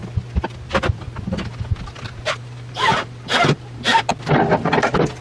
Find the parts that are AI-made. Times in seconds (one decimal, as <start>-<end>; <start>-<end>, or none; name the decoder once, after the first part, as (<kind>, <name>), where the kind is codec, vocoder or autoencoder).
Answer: none